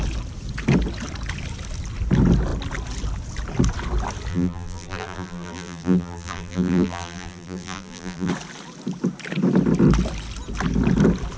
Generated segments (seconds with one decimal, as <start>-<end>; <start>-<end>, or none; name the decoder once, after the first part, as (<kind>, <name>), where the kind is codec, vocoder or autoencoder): 4.3-8.3 (vocoder, BigVGAN v2)

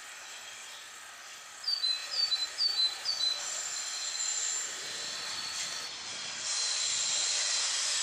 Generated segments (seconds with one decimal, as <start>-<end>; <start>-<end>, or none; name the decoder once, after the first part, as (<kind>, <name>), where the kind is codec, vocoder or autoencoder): 2.0-3.1 (vocoder, BigVGAN v2)